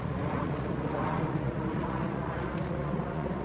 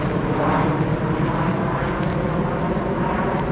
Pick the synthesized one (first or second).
first